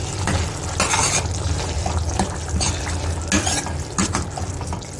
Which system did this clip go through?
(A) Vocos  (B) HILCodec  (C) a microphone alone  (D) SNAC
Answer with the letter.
C